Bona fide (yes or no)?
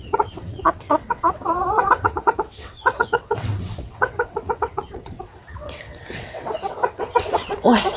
no